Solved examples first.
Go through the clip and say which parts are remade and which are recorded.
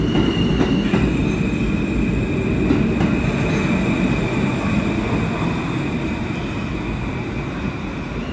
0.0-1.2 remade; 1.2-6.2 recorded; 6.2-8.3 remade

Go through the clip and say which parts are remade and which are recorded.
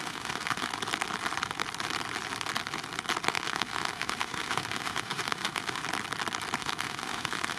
0.0-0.7 remade; 0.7-3.3 recorded; 3.3-5.8 remade; 5.8-6.6 recorded; 6.6-7.6 remade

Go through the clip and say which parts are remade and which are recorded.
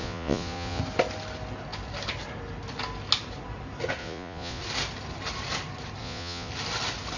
0.0-0.8 remade; 0.8-4.0 recorded; 4.0-4.6 remade; 4.6-6.0 recorded; 6.0-6.5 remade; 6.5-7.2 recorded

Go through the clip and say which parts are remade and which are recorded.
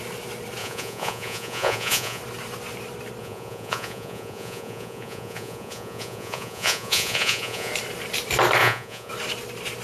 0.0-0.6 recorded; 0.6-2.2 remade; 2.2-3.2 recorded; 3.2-7.7 remade; 7.7-8.6 recorded; 8.6-9.1 remade; 9.1-9.8 recorded